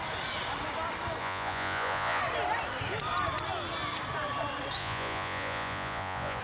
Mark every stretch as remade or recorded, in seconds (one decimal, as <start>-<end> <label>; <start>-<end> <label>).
0.0-1.2 recorded; 1.2-2.2 remade; 2.2-4.8 recorded; 4.8-6.4 remade